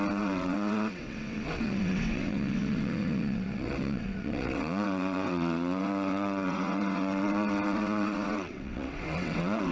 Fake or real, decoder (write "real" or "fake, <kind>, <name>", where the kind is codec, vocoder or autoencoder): fake, vocoder, WaveNeXt